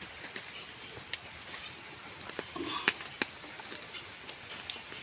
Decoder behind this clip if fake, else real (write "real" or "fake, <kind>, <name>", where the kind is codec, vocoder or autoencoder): real